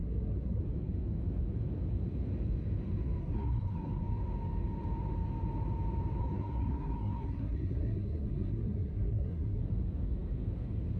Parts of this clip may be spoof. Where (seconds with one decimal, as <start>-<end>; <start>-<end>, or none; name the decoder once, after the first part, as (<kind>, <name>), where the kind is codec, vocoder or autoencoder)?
0.0-0.6 (codec, SNAC); 3.2-4.0; 6.2-9.6

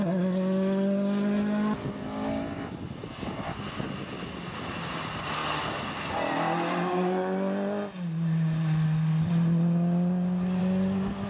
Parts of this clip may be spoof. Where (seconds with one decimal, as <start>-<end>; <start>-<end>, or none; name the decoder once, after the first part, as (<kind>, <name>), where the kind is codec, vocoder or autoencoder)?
none

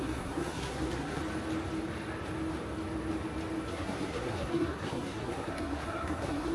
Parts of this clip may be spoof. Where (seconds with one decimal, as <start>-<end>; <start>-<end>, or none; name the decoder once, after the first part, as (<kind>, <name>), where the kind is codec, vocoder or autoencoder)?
0.0-1.2 (codec, SNAC); 3.7-6.5

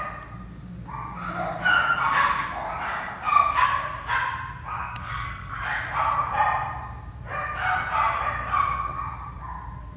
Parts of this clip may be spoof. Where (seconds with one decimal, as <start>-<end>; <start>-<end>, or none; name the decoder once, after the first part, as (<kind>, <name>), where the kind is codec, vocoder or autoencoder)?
4.8-5.5 (codec, SNAC)

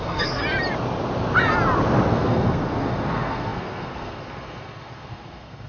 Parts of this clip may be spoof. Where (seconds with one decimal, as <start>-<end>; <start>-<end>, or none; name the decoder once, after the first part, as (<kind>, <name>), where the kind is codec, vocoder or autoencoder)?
0.0-0.4 (codec, SNAC); 2.1-5.7

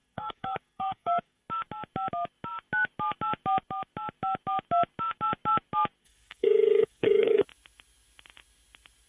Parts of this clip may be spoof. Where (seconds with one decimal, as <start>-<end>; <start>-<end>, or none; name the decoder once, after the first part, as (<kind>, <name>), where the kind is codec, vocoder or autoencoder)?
0.0-1.4 (codec, SNAC); 6.0-7.4

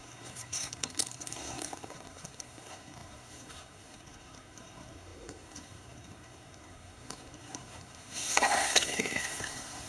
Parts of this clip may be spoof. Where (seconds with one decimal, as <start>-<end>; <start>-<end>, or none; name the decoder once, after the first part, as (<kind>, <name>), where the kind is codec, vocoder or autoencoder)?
0.0-9.9 (codec, SNAC)

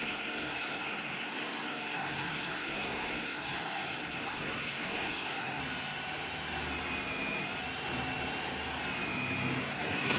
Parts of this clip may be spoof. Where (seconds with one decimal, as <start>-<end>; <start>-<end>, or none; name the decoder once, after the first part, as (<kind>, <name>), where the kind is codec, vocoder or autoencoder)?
0.0-5.6 (codec, SNAC); 9.6-10.2